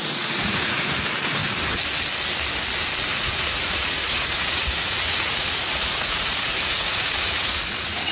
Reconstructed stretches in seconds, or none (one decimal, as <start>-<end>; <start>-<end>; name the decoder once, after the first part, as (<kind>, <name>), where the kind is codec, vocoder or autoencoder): 0.0-0.8 (vocoder, Vocos); 3.1-8.1